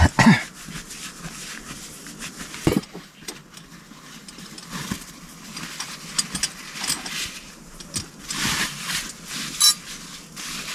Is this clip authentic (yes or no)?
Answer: yes